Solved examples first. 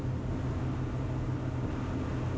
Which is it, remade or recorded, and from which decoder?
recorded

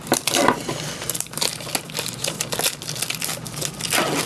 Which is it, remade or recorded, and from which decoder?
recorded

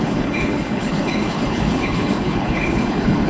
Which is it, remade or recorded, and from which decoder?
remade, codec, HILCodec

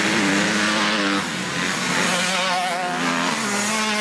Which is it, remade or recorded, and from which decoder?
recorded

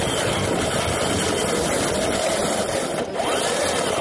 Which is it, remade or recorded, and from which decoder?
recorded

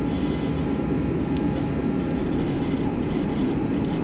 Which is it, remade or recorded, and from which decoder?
recorded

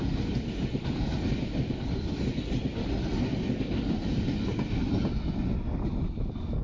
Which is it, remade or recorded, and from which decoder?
recorded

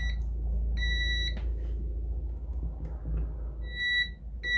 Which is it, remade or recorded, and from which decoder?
recorded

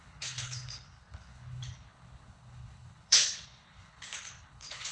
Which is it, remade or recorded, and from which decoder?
remade, codec, HILCodec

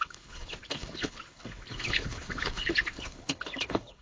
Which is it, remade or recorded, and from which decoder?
remade, codec, HILCodec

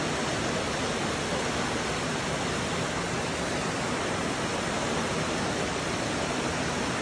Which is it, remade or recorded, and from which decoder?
recorded